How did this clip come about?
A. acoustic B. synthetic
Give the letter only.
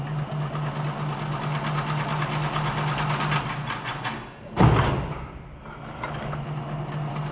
A